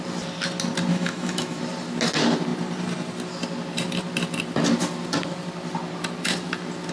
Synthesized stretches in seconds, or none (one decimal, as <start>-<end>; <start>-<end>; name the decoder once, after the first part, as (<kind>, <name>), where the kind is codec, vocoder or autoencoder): 0.9-1.6 (autoencoder, DAC-VAE)